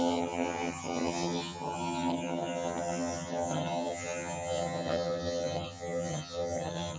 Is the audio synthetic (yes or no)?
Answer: yes